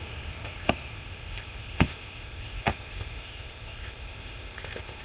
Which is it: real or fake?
fake